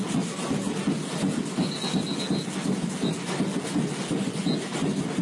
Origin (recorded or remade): recorded